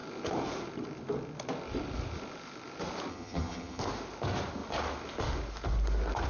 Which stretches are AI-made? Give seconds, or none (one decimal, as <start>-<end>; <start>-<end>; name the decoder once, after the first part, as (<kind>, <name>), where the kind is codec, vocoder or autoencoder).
3.1-3.8 (vocoder, HiFi-GAN)